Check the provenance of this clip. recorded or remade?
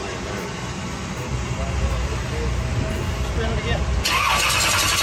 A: recorded